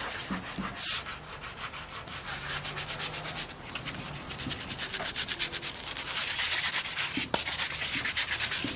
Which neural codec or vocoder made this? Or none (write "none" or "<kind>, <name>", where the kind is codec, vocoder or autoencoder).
none